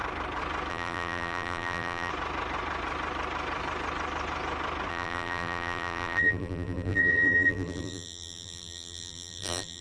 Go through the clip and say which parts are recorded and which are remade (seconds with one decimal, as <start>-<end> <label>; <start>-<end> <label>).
0.0-0.7 recorded; 0.7-2.1 remade; 2.1-4.9 recorded; 4.9-9.8 remade

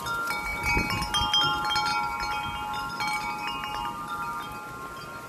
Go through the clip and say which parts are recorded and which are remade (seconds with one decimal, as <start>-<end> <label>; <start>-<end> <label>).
0.0-5.3 recorded

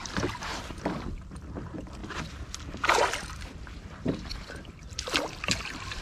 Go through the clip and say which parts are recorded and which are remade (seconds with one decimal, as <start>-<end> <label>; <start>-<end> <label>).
0.0-2.0 recorded; 2.0-4.3 remade; 4.3-6.0 recorded

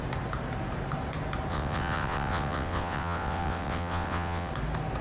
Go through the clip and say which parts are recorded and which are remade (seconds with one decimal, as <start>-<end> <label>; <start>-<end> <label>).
0.0-1.5 recorded; 1.5-4.5 remade; 4.5-5.0 recorded